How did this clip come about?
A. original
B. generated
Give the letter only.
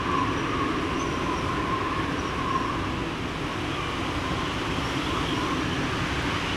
A